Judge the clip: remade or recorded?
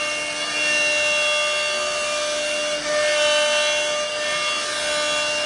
recorded